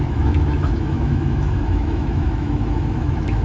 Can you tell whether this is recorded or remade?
remade